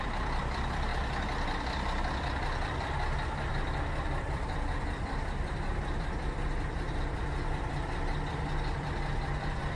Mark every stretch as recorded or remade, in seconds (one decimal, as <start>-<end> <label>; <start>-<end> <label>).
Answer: 0.0-0.9 remade; 0.9-3.5 recorded; 3.5-9.8 remade